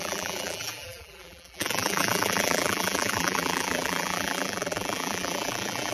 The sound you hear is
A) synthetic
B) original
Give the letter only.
A